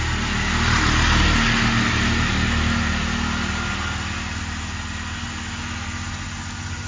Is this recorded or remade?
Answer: recorded